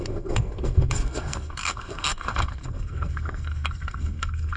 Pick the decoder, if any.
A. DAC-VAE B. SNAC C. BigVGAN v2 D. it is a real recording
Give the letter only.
B